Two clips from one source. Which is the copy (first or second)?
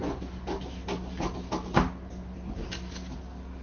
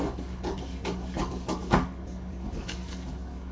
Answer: second